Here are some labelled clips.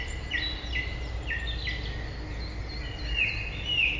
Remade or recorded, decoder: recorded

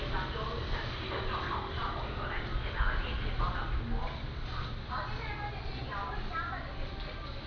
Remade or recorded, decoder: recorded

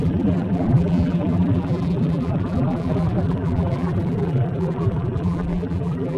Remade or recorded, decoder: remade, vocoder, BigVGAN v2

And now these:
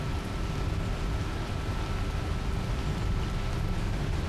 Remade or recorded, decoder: recorded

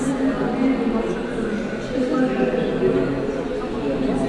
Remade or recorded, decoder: recorded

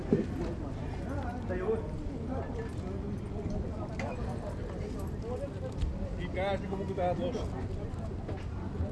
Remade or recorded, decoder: recorded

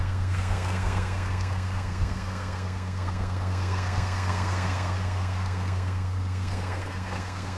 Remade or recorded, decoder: remade, codec, SNAC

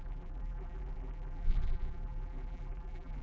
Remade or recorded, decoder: remade, vocoder, BigVGAN v2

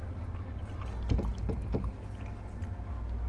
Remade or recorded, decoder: recorded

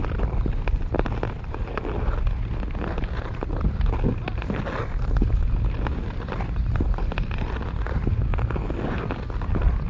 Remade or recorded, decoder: recorded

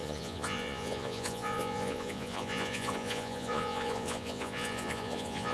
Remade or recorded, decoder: remade, vocoder, Vocos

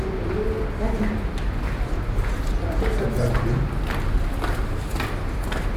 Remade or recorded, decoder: recorded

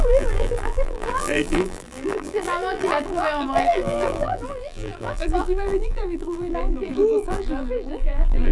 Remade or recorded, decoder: remade, vocoder, BigVGAN v2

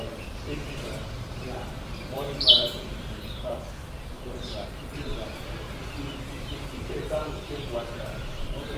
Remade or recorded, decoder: remade, vocoder, BigVGAN v2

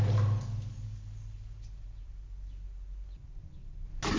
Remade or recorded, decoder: recorded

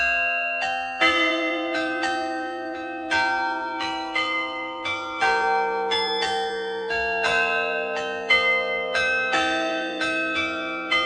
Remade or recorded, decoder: remade, vocoder, BigVGAN v2